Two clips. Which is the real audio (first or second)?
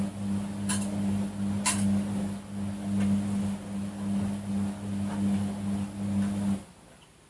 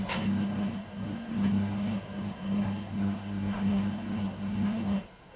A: first